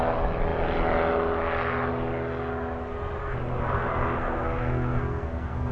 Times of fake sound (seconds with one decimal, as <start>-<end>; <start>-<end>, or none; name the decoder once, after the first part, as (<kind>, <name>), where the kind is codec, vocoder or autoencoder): 3.2-5.7 (codec, SNAC)